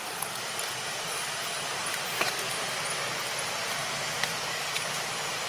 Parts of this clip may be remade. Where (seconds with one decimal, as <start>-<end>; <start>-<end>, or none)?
none